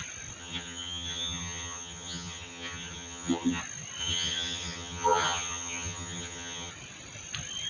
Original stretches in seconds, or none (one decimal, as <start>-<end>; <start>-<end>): 0.0-0.4; 3.6-4.0; 6.7-7.7